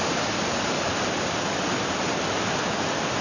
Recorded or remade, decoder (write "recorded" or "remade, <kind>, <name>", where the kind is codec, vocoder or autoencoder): recorded